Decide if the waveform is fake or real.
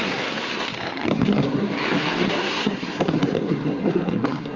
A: fake